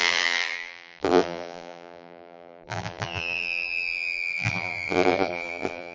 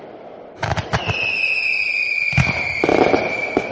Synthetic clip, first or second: first